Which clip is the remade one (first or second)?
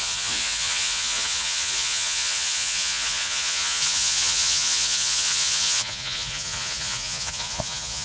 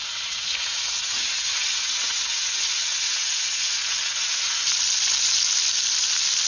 first